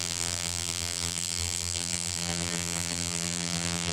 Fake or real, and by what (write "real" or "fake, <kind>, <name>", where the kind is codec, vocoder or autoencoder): fake, vocoder, BigVGAN v2